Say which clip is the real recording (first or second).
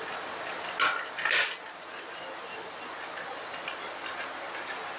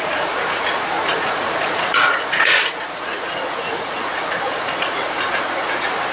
first